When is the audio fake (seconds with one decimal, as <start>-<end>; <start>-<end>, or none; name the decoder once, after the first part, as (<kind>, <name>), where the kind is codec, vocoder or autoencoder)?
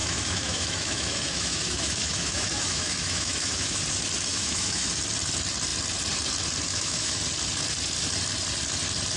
0.0-3.8 (autoencoder, DAC-VAE); 4.3-4.9; 6.7-7.2